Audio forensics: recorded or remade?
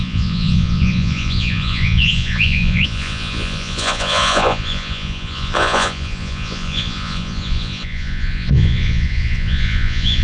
remade